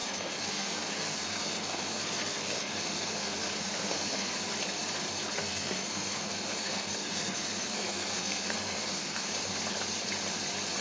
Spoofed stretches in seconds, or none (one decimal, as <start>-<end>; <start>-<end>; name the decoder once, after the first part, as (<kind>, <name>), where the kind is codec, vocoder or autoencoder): 0.0-4.3 (codec, SNAC); 5.4-9.3